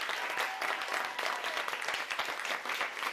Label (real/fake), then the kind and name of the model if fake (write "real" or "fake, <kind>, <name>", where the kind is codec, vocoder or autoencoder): real